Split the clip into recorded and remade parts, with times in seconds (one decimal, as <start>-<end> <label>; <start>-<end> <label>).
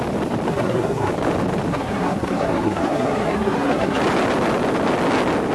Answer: 0.0-0.5 recorded; 0.5-1.1 remade; 1.1-1.7 recorded; 1.7-4.0 remade; 4.0-5.5 recorded